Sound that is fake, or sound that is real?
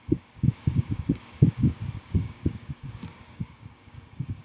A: fake